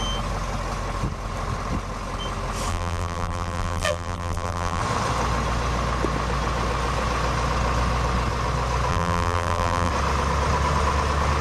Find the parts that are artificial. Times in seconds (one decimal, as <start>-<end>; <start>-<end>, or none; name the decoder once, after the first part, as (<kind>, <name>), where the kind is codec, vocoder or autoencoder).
2.7-4.8 (vocoder, BigVGAN v2); 8.9-9.9